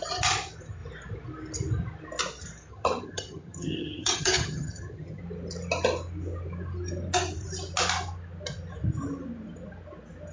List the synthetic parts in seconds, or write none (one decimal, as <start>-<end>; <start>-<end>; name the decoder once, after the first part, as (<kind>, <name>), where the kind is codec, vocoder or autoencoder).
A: 2.7-5.2 (vocoder, HiFi-GAN)